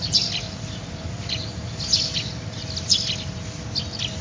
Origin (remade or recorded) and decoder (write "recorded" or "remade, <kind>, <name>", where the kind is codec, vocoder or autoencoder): recorded